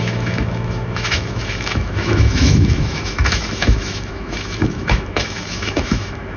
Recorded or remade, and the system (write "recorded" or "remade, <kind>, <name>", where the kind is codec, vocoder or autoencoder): remade, autoencoder, DAC-VAE